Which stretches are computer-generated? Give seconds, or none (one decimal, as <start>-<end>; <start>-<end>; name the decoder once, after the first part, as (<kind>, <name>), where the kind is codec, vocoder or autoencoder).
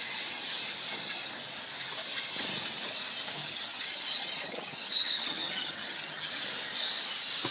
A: 3.4-6.3 (vocoder, HiFi-GAN)